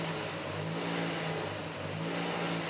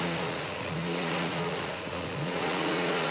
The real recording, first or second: first